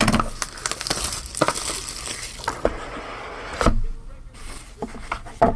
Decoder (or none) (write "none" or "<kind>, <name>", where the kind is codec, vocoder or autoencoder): none